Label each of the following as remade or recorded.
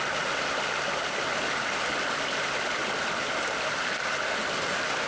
recorded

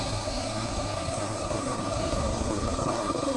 remade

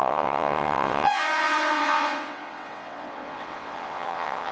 remade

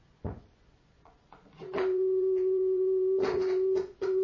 remade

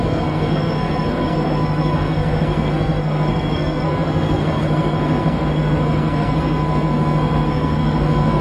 remade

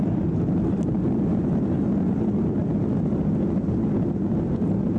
recorded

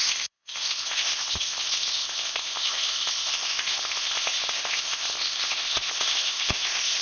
remade